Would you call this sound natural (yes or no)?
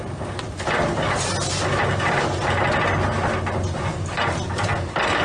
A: yes